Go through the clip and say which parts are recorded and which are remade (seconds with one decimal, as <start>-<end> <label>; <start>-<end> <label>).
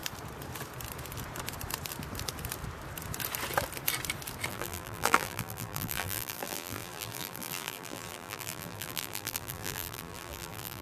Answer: 0.0-4.5 recorded; 4.5-10.8 remade